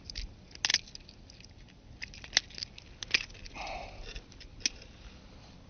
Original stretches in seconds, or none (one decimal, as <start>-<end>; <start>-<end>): 0.0-5.7

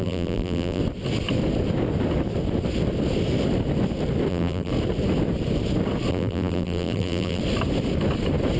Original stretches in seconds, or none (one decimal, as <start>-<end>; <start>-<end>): 0.8-4.3; 4.7-6.1; 7.4-8.6

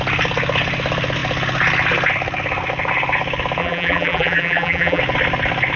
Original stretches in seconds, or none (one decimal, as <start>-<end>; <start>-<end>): 0.0-3.6; 5.0-5.8

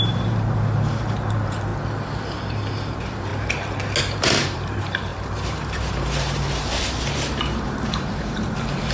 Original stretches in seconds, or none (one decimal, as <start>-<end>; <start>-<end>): 1.7-2.5; 3.3-4.0

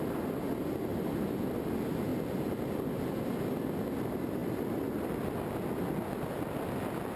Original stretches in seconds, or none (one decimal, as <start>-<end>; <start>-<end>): 0.0-0.9; 1.7-4.4; 5.4-7.2

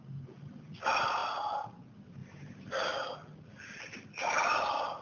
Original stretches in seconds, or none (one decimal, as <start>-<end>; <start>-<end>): 0.0-2.2; 2.9-5.0

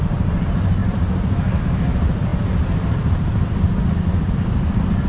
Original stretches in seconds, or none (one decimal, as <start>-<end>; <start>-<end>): 0.0-5.1